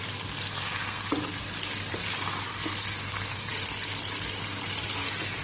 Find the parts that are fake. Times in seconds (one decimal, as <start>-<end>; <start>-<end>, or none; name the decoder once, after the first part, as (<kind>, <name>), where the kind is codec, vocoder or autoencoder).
0.5-1.1 (codec, SNAC); 2.5-3.5